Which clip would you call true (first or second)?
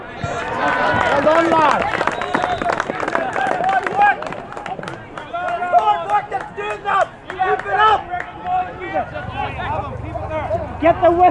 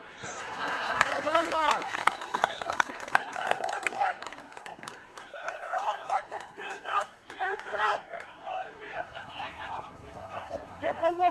first